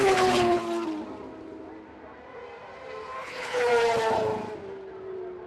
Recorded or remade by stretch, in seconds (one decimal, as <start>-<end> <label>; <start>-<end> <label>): 0.0-0.6 remade; 0.6-3.2 recorded; 3.2-3.7 remade; 3.7-5.5 recorded